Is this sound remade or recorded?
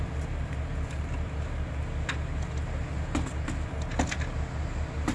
recorded